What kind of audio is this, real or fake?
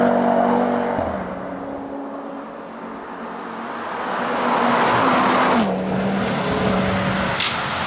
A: real